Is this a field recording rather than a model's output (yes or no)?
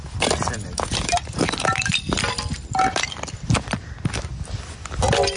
no